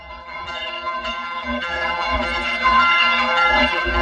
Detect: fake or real fake